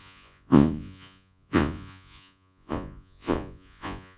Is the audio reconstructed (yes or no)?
yes